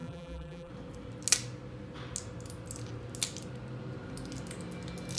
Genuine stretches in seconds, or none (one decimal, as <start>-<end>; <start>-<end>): 0.7-5.2

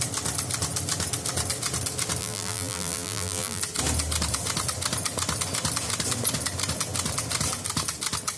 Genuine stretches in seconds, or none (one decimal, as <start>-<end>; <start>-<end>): 0.0-2.2; 3.6-8.4

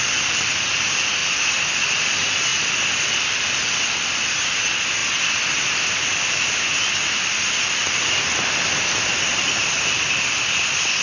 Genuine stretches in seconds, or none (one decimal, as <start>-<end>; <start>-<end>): 0.0-2.5; 3.7-5.0; 5.5-7.8

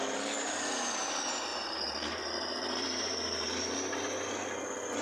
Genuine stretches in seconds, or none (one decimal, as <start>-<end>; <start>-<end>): 0.0-1.5; 3.7-5.0

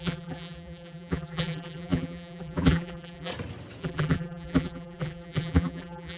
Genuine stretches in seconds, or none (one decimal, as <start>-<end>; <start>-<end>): 3.3-3.8

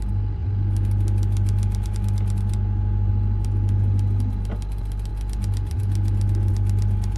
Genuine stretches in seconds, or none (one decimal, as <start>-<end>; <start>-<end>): 0.0-7.2